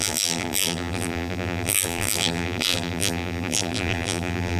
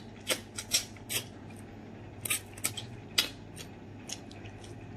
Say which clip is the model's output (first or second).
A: first